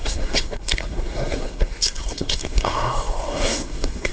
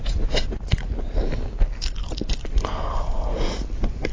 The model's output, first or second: first